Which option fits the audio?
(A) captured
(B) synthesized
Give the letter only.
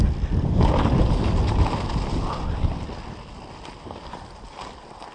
A